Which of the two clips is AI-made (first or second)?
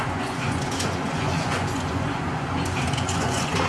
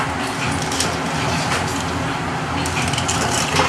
first